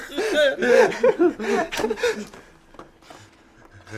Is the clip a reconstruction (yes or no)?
no